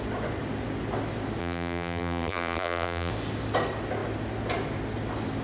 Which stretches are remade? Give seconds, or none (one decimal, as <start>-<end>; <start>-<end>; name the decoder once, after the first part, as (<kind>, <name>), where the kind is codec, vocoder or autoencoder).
1.4-3.1 (vocoder, BigVGAN v2)

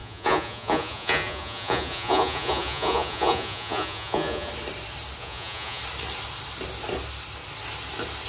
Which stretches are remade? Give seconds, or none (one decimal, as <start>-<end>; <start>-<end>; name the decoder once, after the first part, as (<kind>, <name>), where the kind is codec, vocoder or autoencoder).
0.0-4.5 (vocoder, Vocos); 5.2-5.8

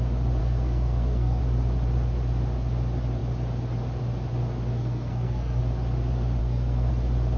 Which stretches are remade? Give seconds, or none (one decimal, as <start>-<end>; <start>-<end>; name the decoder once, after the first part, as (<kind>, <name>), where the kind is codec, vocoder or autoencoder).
0.4-1.4 (codec, SNAC); 4.7-5.6; 6.4-6.9

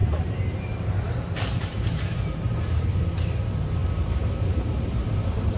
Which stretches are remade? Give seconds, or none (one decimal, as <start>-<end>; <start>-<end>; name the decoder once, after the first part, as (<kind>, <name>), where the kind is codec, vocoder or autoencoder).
0.0-3.4 (vocoder, BigVGAN v2); 3.8-5.6

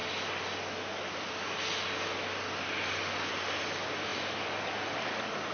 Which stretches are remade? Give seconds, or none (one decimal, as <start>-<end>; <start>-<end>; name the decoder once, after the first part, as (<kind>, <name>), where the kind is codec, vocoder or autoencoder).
4.1-5.5 (vocoder, BigVGAN v2)

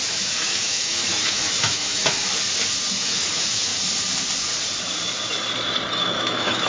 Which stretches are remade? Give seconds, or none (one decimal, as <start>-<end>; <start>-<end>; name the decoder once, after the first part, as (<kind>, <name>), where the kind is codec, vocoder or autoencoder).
0.0-2.3 (autoencoder, DAC-VAE); 2.9-3.7; 5.9-6.7

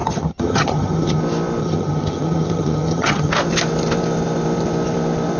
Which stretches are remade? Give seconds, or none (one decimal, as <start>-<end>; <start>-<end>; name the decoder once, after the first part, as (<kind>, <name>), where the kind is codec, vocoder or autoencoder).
0.0-1.2 (vocoder, HiFi-GAN); 1.6-3.3

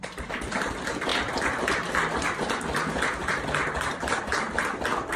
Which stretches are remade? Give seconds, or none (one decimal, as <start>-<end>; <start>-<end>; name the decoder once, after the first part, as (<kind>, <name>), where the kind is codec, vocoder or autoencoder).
none